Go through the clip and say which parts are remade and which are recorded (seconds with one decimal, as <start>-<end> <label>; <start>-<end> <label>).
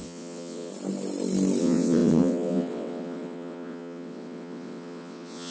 0.0-0.7 remade; 0.7-1.6 recorded; 1.6-5.5 remade